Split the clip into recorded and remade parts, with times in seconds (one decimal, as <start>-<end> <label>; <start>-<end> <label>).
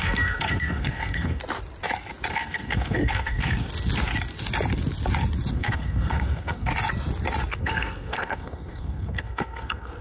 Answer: 0.0-1.4 remade; 1.4-2.3 recorded; 2.3-3.7 remade; 3.7-5.5 recorded; 5.5-6.7 remade; 6.7-7.6 recorded; 7.6-10.0 remade